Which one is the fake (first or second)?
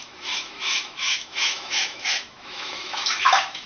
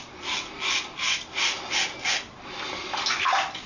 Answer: first